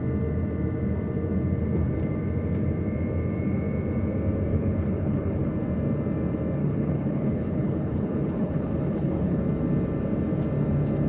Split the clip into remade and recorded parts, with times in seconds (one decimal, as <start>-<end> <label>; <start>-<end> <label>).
0.0-4.5 recorded; 4.5-5.5 remade; 5.5-6.6 recorded; 6.6-9.4 remade; 9.4-11.1 recorded